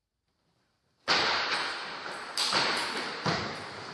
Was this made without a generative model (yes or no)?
no